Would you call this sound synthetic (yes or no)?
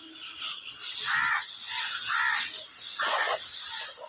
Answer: no